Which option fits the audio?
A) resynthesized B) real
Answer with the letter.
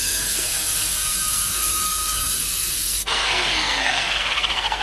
A